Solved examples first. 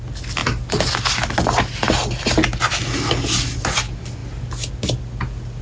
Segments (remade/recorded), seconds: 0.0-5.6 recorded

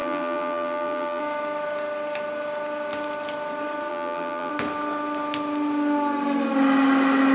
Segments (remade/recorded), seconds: 0.0-1.2 remade; 1.2-3.9 recorded; 3.9-4.5 remade; 4.5-7.3 recorded

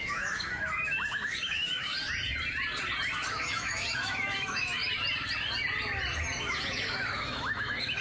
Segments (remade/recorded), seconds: 0.0-1.9 remade; 1.9-3.3 recorded; 3.3-4.8 remade; 4.8-6.4 recorded; 6.4-8.0 remade